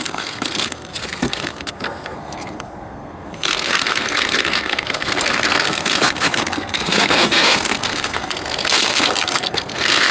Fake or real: fake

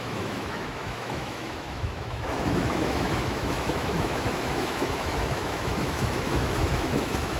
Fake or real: fake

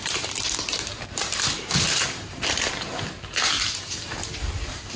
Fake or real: fake